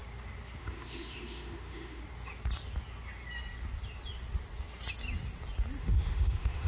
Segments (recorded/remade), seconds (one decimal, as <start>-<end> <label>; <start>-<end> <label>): 0.0-0.6 recorded; 0.6-2.0 remade; 2.0-5.8 recorded; 5.8-6.7 remade